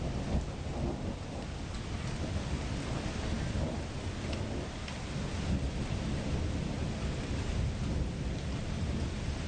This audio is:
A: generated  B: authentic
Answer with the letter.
B